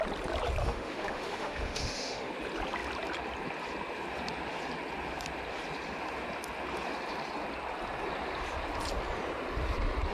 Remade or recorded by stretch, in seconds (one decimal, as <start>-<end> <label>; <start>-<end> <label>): 0.0-0.6 recorded; 0.6-2.3 remade; 2.3-10.1 recorded

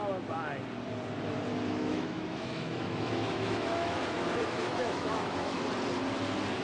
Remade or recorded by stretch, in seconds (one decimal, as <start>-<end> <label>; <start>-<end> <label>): 0.0-1.9 recorded; 1.9-4.0 remade; 4.0-4.4 recorded; 4.4-5.6 remade; 5.6-6.6 recorded

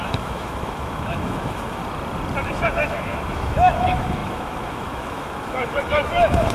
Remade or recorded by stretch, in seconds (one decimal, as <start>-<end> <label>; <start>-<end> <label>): 0.0-1.8 remade; 1.8-2.4 recorded; 2.4-6.5 remade

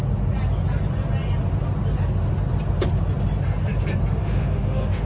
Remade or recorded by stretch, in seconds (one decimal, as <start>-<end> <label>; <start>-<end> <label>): 0.0-4.2 recorded; 4.2-5.1 remade